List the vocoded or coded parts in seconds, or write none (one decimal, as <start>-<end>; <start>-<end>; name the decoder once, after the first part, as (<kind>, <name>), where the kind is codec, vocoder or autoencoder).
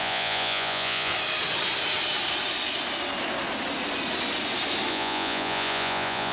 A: 0.0-1.1 (vocoder, Vocos); 4.9-6.3